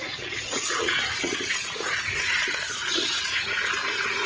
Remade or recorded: remade